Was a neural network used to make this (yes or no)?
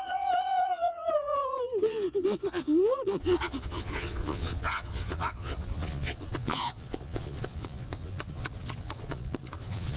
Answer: yes